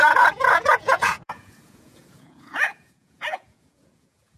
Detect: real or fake fake